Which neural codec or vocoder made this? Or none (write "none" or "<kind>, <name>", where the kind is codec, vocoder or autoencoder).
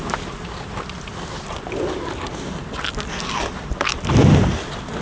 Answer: none